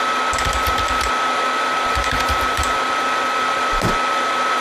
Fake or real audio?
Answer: real